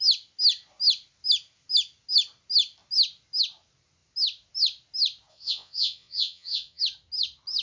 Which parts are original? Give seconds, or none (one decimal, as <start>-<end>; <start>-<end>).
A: 0.0-5.3; 6.8-7.6